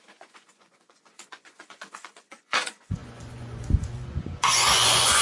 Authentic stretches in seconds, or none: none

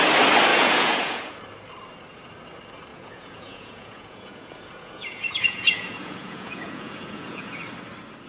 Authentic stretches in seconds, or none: 0.0-0.5; 1.4-2.9; 7.6-8.3

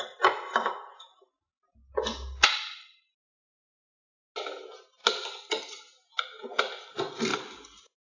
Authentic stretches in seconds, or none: 0.0-2.6; 3.4-7.3